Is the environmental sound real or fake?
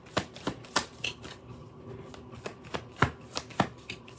real